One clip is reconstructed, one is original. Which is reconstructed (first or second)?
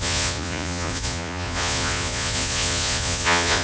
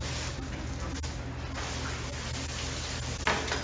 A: first